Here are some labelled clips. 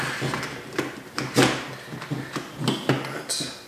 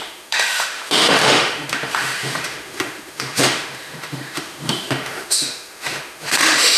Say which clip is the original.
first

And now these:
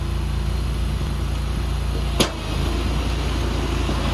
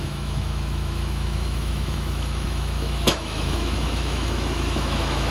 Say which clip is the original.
first